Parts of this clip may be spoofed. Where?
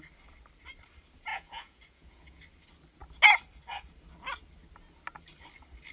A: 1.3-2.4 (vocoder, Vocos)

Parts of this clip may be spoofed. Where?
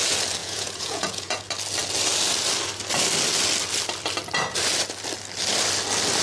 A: 0.4-1.4 (vocoder, Vocos)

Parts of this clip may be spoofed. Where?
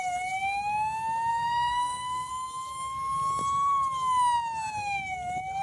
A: 1.3-2.3 (codec, SNAC)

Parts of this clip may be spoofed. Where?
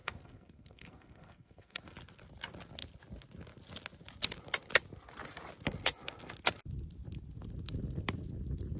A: 0.0-1.8 (codec, SNAC)